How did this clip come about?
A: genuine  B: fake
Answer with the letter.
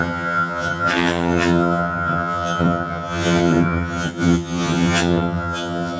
B